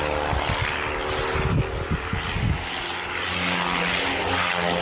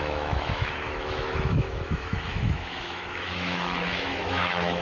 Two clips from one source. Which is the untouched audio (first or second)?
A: first